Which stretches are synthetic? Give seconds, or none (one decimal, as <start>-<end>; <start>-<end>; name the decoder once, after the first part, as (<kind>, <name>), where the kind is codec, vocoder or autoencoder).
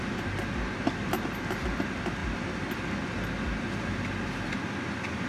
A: none